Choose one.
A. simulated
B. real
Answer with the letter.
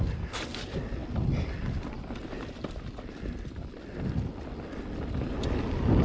B